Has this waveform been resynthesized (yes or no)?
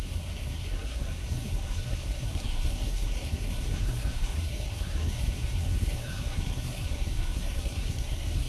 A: yes